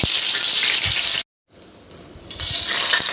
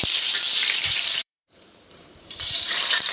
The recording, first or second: first